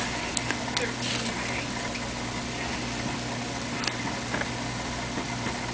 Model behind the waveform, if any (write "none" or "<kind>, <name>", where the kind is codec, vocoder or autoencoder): none